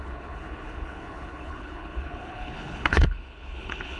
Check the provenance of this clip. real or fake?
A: fake